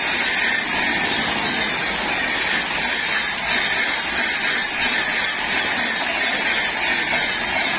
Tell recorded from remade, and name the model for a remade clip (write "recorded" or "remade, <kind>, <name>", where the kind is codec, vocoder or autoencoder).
recorded